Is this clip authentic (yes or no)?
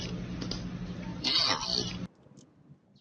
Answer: yes